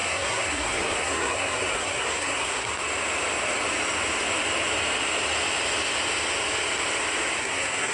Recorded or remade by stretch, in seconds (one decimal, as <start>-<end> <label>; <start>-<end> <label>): 0.0-2.7 remade; 2.7-7.4 recorded; 7.4-7.9 remade